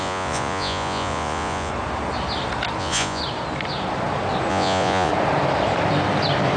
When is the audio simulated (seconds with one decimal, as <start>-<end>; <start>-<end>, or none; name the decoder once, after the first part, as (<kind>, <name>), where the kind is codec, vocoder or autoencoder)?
0.0-1.7 (vocoder, Vocos); 2.8-3.2; 4.5-5.1